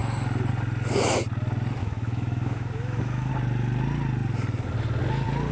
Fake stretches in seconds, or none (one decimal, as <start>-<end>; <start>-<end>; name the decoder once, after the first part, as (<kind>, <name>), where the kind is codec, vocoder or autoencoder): 1.8-3.3 (autoencoder, DAC-VAE)